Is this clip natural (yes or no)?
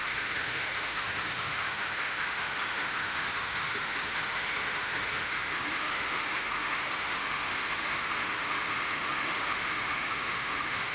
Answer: no